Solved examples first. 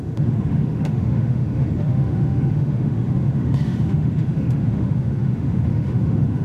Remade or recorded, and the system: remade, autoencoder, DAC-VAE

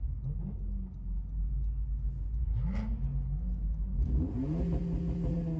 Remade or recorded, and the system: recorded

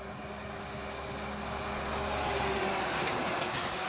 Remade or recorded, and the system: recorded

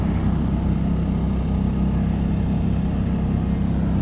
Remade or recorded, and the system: recorded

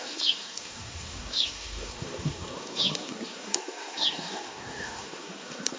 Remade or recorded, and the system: remade, codec, SNAC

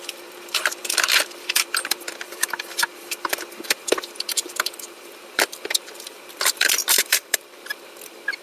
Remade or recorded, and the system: remade, vocoder, BigVGAN v2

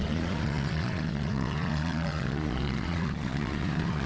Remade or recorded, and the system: remade, vocoder, Vocos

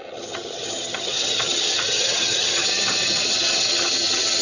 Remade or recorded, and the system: remade, vocoder, HiFi-GAN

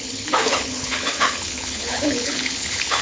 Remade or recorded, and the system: remade, codec, HILCodec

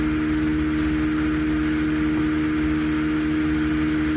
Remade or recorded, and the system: recorded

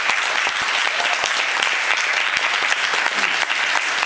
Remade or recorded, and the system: recorded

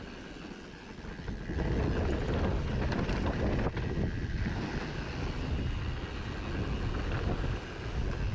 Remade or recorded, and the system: recorded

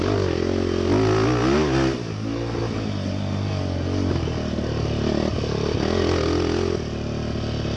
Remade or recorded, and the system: recorded